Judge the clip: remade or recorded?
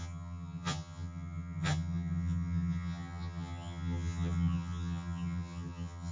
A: remade